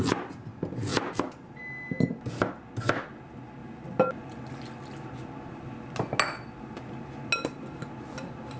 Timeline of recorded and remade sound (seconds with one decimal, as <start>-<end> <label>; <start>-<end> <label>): 0.0-8.6 recorded